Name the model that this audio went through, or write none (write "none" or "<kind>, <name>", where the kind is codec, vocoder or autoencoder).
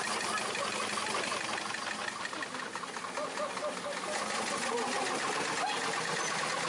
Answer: none